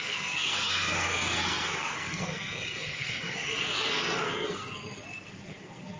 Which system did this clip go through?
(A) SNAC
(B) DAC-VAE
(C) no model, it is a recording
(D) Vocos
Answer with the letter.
A